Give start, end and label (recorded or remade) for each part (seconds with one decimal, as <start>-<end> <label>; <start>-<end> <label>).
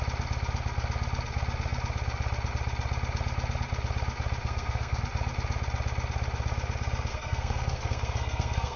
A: 0.0-4.4 recorded; 4.4-5.0 remade; 5.0-7.1 recorded; 7.1-8.8 remade